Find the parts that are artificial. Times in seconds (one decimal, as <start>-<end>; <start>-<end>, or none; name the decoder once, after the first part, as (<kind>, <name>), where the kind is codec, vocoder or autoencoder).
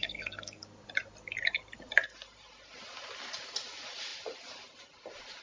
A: 0.0-0.6 (codec, SNAC)